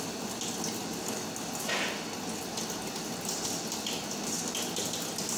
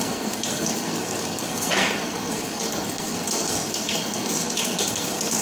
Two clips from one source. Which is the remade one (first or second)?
second